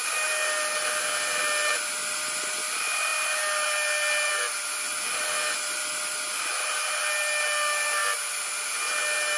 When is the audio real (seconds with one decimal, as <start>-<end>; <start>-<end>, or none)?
0.0-9.4